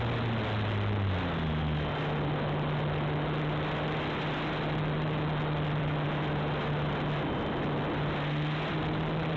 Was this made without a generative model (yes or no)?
yes